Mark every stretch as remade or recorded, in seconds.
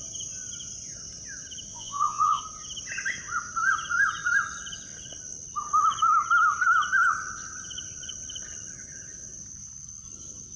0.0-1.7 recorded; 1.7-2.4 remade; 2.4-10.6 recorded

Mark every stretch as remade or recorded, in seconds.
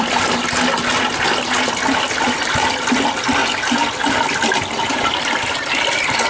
0.0-0.4 remade; 0.4-1.9 recorded; 1.9-6.3 remade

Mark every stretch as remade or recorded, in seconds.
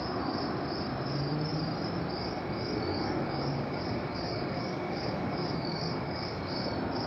0.0-2.9 recorded; 2.9-6.4 remade; 6.4-7.1 recorded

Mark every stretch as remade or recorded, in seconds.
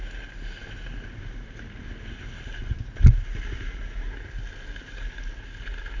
0.0-6.0 recorded